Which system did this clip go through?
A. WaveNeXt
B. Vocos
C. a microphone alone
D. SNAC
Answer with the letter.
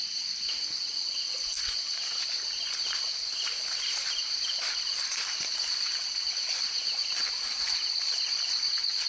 C